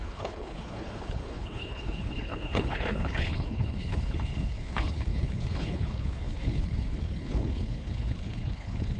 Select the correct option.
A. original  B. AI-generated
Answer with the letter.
B